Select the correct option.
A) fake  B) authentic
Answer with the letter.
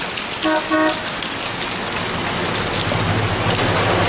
B